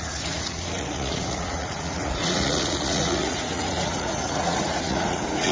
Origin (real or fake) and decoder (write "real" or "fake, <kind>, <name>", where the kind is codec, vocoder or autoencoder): fake, vocoder, Vocos